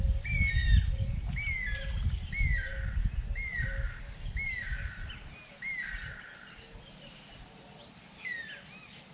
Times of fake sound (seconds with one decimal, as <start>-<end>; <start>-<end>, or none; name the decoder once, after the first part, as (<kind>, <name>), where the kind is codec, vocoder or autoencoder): none